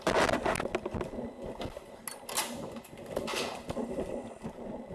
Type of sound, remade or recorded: recorded